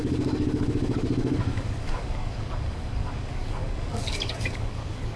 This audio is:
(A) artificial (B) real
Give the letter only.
A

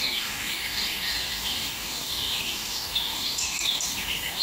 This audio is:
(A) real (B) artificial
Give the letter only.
B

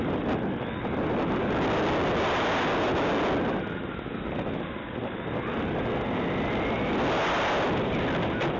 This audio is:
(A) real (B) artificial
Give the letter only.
A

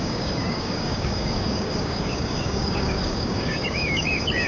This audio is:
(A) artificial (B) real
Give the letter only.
A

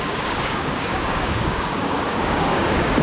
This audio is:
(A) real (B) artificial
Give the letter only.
B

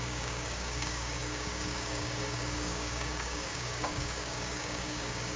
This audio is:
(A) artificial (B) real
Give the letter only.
A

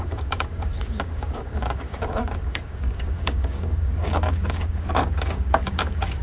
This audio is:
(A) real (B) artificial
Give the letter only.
B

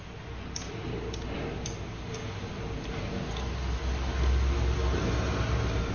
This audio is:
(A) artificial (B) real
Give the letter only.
B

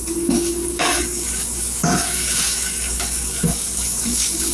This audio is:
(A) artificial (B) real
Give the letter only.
A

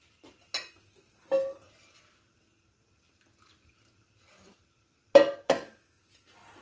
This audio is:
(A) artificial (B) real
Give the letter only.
B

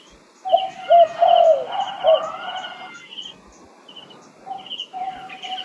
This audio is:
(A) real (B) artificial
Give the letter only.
A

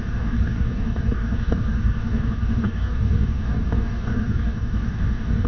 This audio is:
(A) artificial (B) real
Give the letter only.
A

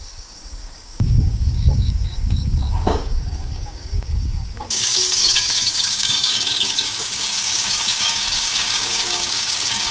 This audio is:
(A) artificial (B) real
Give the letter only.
A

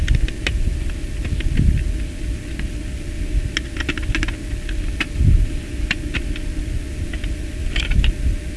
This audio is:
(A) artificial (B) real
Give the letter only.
B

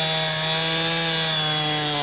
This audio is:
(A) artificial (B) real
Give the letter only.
B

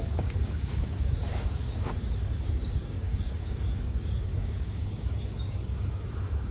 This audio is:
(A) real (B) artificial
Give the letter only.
B